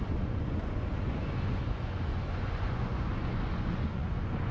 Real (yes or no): no